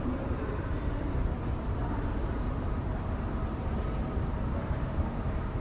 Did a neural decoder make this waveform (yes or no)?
yes